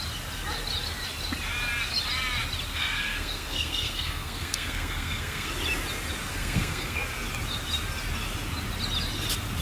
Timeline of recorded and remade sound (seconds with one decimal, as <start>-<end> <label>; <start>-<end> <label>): 0.0-2.7 recorded; 2.7-5.5 remade; 5.5-6.3 recorded; 6.3-7.0 remade; 7.0-9.6 recorded